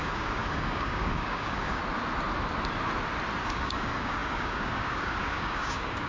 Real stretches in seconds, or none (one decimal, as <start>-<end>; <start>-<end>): 1.8-3.4